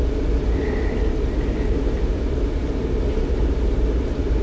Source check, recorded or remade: recorded